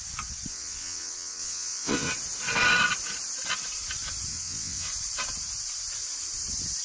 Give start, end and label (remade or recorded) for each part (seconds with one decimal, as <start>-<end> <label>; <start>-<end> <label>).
0.0-0.5 recorded; 0.5-2.1 remade; 2.1-4.3 recorded; 4.3-4.9 remade; 4.9-6.8 recorded